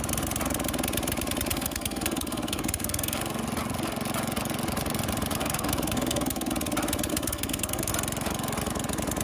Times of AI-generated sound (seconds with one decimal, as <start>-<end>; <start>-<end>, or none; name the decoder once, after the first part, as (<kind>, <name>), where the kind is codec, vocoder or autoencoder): 1.5-3.2 (codec, SNAC); 5.4-6.5; 7.1-7.9